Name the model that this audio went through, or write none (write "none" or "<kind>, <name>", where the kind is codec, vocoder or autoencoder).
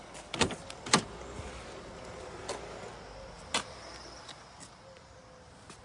none